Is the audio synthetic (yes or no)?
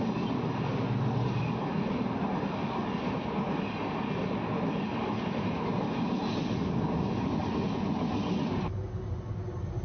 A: no